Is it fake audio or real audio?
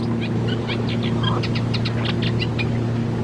real